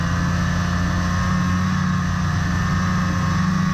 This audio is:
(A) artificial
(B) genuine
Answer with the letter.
B